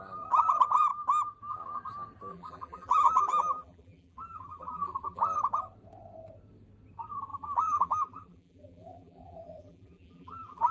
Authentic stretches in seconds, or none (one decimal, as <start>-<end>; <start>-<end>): 0.0-2.3; 5.2-7.3